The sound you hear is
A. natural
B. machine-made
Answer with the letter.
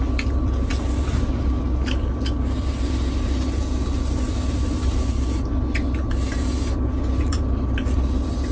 A